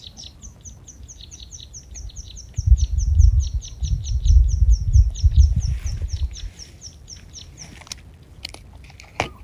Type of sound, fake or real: real